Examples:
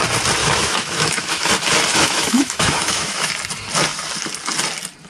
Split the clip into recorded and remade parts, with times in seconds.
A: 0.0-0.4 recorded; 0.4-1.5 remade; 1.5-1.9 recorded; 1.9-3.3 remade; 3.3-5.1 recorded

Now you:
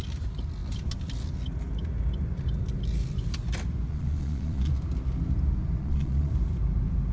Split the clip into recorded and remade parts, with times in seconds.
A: 0.0-3.9 recorded; 3.9-4.7 remade; 4.7-5.8 recorded; 5.8-6.3 remade; 6.3-7.1 recorded